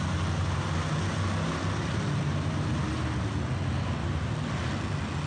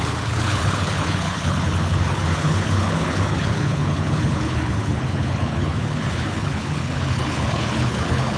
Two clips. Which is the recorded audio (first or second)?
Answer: first